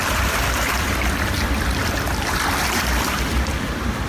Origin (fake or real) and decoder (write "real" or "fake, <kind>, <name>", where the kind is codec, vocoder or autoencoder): fake, vocoder, BigVGAN v2